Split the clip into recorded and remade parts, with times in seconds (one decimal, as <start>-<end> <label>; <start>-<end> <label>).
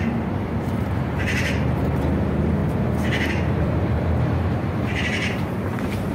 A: 0.0-2.6 remade; 2.6-3.3 recorded; 3.3-6.1 remade